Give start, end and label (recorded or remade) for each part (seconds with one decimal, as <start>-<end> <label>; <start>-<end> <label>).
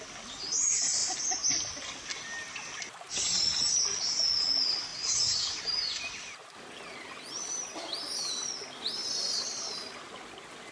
0.0-10.7 recorded